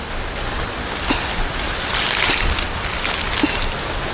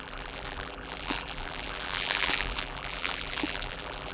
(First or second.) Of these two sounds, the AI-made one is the second